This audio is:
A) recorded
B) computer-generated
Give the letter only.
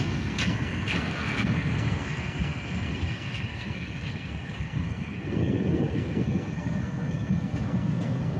B